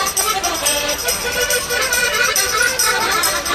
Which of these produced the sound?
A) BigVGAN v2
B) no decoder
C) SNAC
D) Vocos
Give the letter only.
A